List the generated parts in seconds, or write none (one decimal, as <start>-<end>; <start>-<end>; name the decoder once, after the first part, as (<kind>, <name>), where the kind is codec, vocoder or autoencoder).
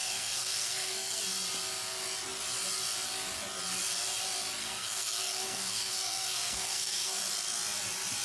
0.0-1.2 (codec, SNAC); 4.6-7.2